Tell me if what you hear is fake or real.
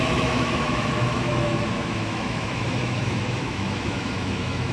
fake